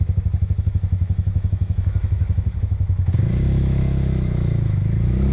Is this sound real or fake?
fake